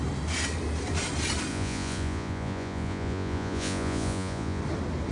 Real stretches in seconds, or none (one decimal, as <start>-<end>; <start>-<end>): 0.0-1.5; 4.6-5.1